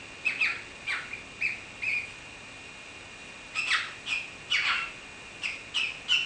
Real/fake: real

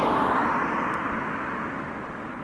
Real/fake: real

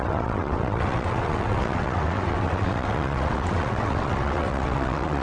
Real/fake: fake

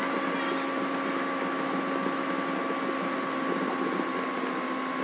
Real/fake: real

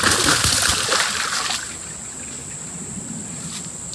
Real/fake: real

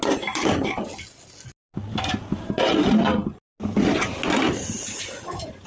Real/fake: real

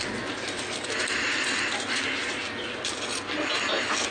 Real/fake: real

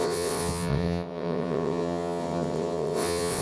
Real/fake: fake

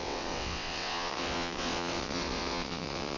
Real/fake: fake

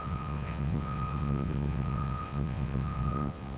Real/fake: fake